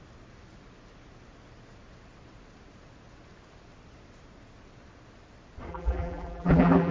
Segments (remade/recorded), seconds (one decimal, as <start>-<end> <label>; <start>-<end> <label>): 0.0-5.7 recorded; 5.7-6.9 remade

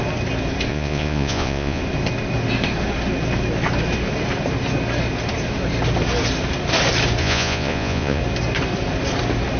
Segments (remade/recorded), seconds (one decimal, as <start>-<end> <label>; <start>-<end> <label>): 0.0-0.7 recorded; 0.7-1.8 remade; 1.8-7.2 recorded; 7.2-8.2 remade; 8.2-9.6 recorded

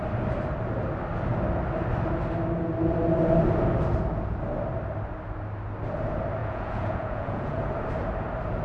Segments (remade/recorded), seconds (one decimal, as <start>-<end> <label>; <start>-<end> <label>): 0.0-6.4 recorded; 6.4-7.6 remade; 7.6-8.6 recorded